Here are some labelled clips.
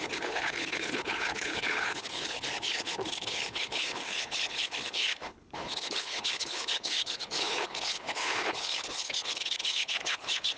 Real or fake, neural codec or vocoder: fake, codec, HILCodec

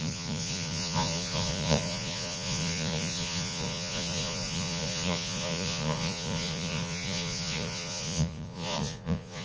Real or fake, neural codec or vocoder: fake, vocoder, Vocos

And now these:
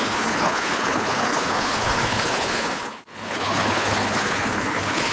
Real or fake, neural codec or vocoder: fake, codec, HILCodec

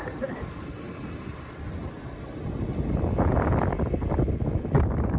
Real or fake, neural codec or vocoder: real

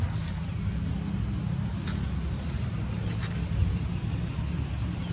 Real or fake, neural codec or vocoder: real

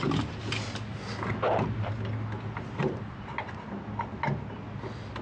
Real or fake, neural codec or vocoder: real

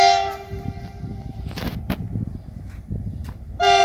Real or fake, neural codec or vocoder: fake, vocoder, BigVGAN v2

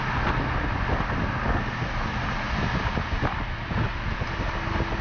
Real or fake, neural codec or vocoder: real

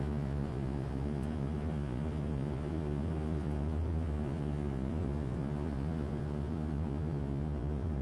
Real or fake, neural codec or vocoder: fake, vocoder, Vocos